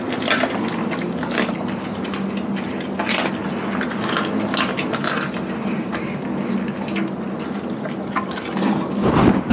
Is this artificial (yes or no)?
no